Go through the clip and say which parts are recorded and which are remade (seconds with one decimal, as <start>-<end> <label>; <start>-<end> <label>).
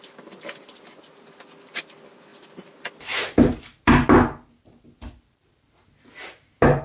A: 0.0-6.8 recorded